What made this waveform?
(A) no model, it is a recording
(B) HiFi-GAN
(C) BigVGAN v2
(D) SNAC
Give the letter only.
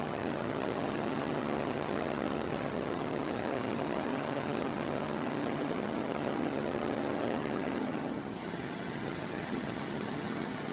B